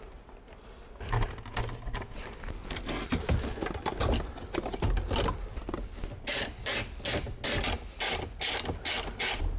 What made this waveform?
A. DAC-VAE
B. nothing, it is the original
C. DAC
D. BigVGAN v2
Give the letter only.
B